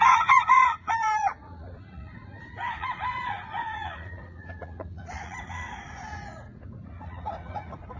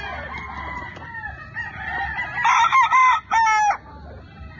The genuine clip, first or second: second